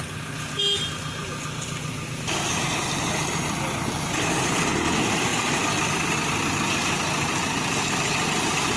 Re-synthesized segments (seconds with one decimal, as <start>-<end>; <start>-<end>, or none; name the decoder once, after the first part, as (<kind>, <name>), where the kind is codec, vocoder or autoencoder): none